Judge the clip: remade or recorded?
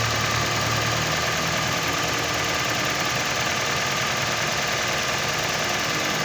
recorded